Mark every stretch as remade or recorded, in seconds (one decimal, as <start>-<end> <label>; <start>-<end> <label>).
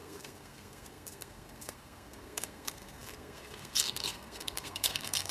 0.0-5.3 remade